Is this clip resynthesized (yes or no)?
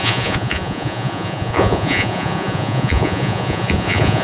yes